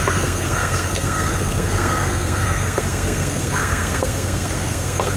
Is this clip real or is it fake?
fake